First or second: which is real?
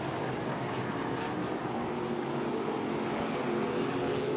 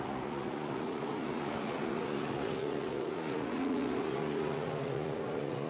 first